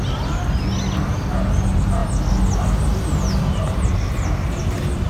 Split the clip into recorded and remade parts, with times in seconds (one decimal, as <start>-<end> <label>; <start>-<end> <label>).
0.0-5.1 recorded